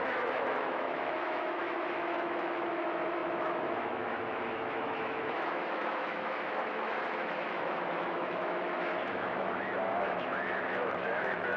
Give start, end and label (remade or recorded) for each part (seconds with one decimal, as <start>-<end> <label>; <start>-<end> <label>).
0.0-11.6 remade